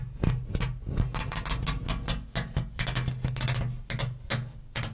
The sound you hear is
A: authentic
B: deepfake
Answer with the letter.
A